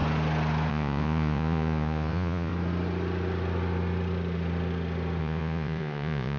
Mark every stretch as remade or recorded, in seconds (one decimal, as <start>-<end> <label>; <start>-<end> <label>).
0.0-0.7 recorded; 0.7-2.5 remade; 2.5-5.2 recorded; 5.2-6.4 remade